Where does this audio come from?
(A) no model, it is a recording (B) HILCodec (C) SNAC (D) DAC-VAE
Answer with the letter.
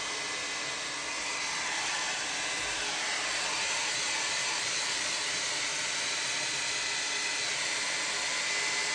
A